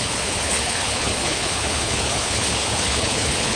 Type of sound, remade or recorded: remade